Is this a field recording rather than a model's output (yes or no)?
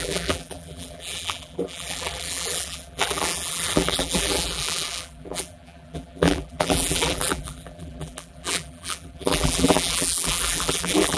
no